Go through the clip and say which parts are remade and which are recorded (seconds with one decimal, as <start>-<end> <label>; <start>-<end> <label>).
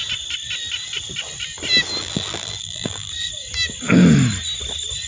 0.0-2.0 recorded; 2.0-3.1 remade; 3.1-5.1 recorded